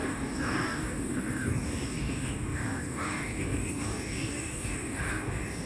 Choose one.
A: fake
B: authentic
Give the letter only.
A